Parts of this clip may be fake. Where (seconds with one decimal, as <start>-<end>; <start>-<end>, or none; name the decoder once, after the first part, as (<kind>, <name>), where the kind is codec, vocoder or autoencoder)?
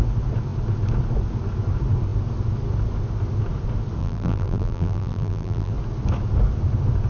4.0-5.7 (vocoder, BigVGAN v2)